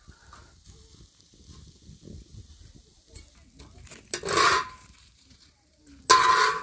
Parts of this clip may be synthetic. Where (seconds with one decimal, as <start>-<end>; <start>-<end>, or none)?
4.6-5.8